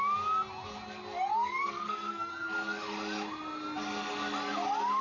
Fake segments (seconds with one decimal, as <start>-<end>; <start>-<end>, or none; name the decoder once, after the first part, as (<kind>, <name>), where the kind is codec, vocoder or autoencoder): 1.3-2.3 (codec, SNAC)